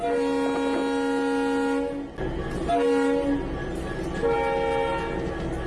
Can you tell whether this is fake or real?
real